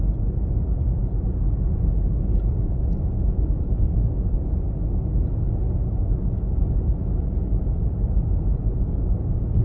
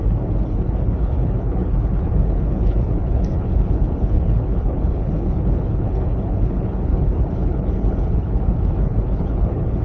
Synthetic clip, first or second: second